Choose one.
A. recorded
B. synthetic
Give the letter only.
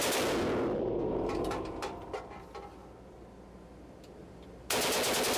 A